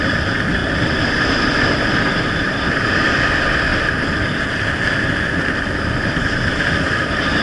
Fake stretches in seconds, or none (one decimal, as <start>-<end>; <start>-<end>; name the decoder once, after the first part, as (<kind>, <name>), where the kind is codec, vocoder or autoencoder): 0.6-1.1 (vocoder, BigVGAN v2); 3.7-7.4